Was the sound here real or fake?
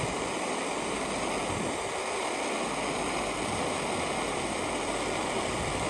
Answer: real